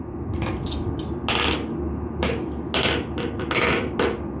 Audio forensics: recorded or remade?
recorded